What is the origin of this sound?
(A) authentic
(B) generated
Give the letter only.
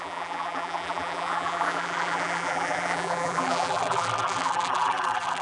B